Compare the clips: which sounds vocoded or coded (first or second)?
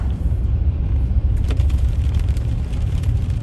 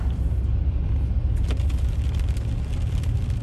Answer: first